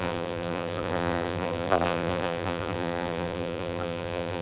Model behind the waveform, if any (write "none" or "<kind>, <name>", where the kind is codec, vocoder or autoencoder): vocoder, BigVGAN v2